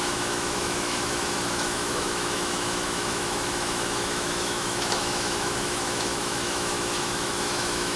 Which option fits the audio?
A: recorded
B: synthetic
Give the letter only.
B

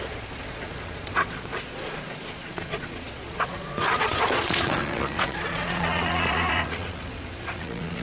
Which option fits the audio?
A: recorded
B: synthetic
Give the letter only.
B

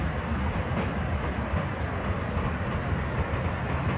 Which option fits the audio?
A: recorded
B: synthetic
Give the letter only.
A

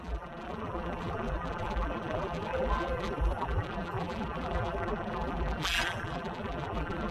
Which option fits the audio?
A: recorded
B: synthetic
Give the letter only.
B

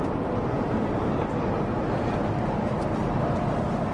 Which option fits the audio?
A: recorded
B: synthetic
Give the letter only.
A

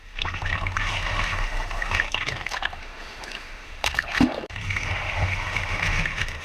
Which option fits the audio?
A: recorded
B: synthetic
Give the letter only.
B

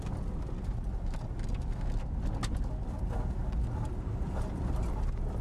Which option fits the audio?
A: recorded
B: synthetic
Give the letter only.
A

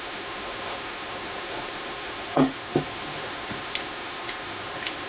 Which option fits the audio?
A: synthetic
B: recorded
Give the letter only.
A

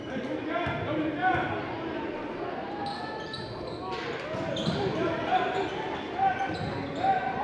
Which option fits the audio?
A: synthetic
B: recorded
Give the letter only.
B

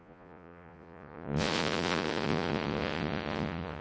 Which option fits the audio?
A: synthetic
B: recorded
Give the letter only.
A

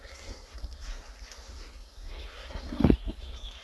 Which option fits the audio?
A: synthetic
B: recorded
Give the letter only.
A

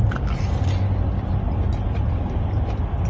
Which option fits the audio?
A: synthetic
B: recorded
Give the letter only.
B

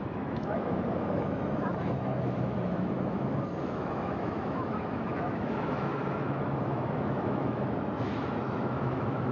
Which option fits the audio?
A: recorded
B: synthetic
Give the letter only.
B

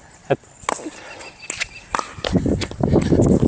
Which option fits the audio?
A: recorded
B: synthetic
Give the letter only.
A